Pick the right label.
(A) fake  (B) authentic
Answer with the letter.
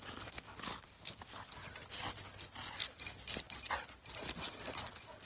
B